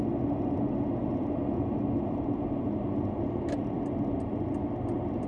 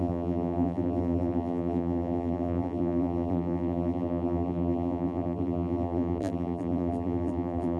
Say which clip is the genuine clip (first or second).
first